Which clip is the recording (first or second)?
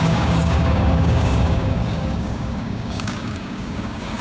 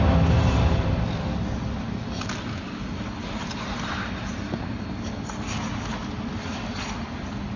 second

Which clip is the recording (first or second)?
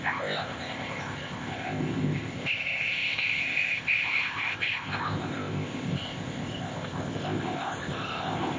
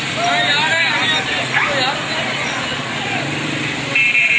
second